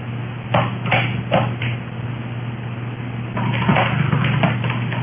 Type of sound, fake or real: real